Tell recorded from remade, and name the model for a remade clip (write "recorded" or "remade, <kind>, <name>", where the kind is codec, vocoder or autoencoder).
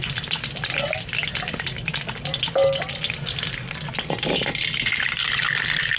recorded